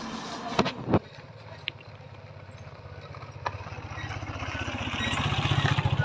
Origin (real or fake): real